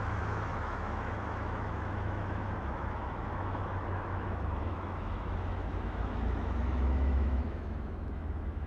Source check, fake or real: fake